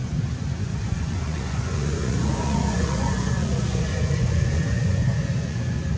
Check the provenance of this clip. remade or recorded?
remade